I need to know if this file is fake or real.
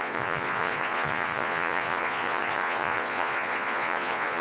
fake